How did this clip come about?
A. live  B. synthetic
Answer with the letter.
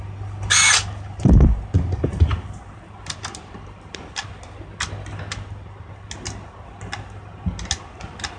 A